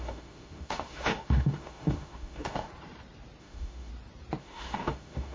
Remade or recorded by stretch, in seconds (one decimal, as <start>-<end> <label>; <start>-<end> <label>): 0.0-2.7 remade; 2.7-3.4 recorded; 3.4-3.9 remade; 3.9-4.4 recorded; 4.4-5.3 remade